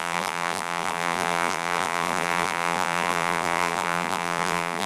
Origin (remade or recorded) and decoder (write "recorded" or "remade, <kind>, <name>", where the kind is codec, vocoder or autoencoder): remade, vocoder, BigVGAN v2